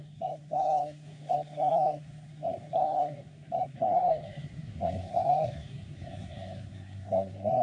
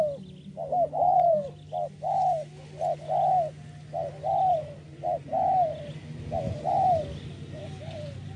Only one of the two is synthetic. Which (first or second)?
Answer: first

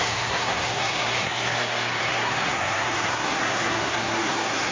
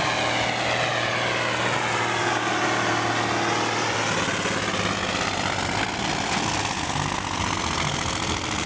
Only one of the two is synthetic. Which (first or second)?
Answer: first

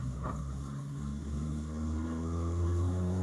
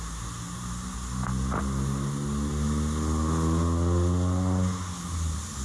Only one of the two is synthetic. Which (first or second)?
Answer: first